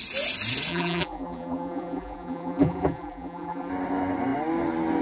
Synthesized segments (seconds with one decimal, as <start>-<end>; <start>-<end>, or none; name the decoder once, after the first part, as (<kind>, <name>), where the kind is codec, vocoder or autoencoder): 0.7-3.7 (vocoder, BigVGAN v2)